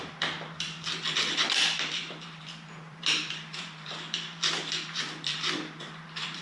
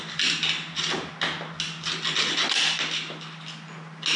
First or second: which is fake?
first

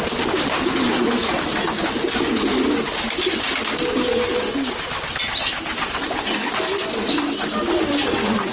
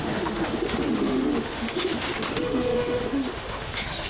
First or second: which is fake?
second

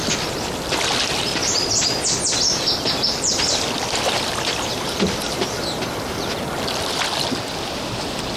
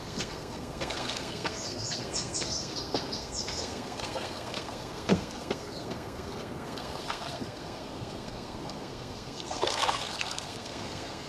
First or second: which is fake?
second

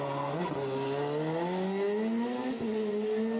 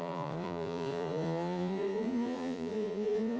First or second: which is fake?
second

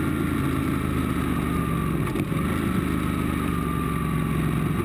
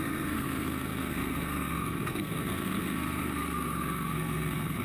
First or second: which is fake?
second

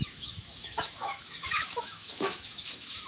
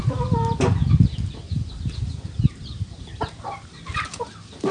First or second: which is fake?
first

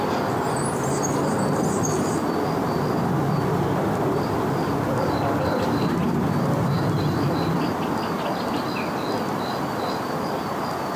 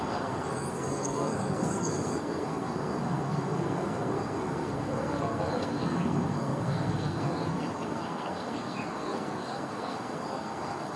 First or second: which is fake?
second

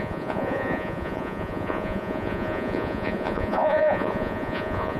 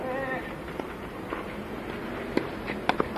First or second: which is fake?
first